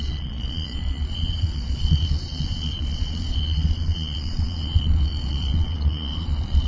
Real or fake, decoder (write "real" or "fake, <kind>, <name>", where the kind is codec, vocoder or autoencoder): fake, vocoder, Vocos